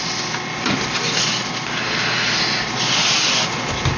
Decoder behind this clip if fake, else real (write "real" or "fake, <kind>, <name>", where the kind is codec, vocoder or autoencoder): real